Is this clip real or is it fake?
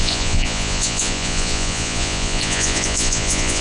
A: fake